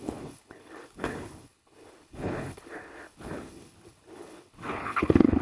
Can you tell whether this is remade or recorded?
remade